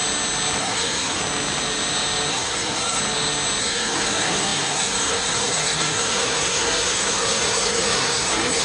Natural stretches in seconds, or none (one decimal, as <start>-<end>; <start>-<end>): 0.0-0.6; 1.2-2.3; 3.0-3.6